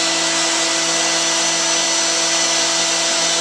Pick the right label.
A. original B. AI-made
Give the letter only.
A